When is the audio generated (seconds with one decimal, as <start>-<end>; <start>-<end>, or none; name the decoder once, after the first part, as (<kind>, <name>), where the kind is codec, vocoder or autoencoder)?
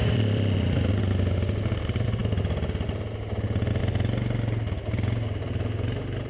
0.0-1.0 (vocoder, BigVGAN v2)